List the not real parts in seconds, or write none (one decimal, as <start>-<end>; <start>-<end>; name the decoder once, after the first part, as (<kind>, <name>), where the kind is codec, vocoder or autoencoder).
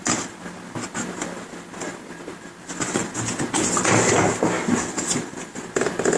none